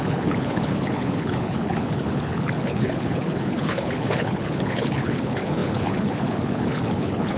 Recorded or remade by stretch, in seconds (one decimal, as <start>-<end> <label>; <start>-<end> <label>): 0.0-7.4 remade

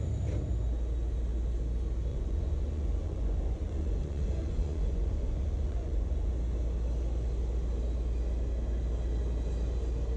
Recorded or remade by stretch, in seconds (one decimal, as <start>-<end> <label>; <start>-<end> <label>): 0.0-2.1 recorded; 2.1-6.3 remade; 6.3-10.2 recorded

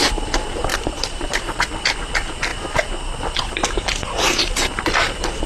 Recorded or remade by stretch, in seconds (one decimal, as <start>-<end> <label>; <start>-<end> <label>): 0.0-0.7 recorded; 0.7-1.7 remade; 1.7-5.5 recorded